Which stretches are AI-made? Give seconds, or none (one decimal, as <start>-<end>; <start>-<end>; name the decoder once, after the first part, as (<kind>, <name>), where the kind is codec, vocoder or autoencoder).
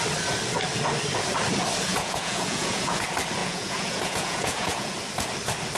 1.9-3.0 (vocoder, Vocos); 3.4-4.9